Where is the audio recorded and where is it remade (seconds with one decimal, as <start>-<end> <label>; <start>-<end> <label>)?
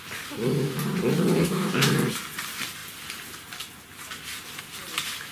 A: 0.0-1.4 recorded; 1.4-1.9 remade; 1.9-5.3 recorded